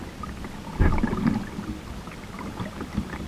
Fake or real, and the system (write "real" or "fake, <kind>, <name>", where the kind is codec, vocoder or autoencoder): real